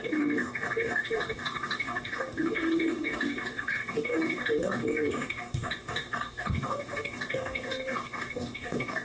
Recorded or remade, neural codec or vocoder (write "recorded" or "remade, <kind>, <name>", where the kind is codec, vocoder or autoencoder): remade, codec, DAC